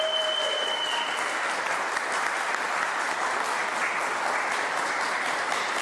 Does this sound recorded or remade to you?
recorded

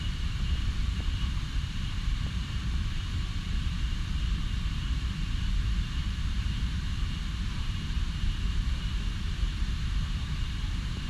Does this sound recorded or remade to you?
remade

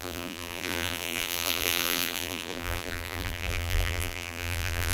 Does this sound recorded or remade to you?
remade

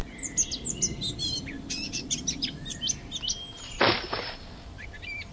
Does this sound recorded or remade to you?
recorded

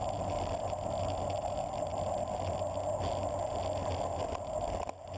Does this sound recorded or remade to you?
recorded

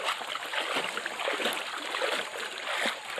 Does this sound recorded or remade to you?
recorded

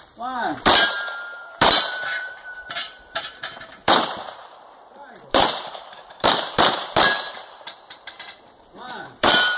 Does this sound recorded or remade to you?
remade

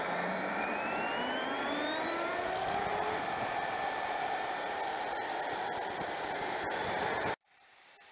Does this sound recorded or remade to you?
remade